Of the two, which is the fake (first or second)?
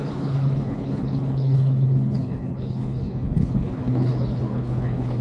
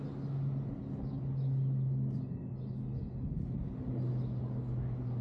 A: first